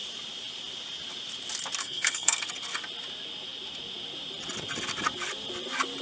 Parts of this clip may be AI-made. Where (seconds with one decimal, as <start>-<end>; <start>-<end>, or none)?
1.8-2.4